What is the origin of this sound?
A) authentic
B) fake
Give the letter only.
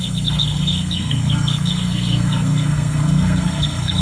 B